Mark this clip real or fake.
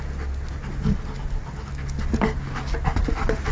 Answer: real